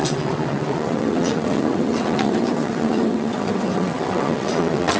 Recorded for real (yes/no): no